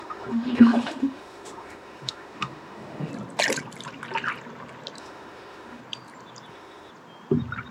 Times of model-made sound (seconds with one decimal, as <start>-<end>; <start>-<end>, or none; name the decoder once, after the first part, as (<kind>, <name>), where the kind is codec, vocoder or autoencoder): 0.0-3.1 (autoencoder, DAC-VAE); 5.0-5.8; 6.5-6.9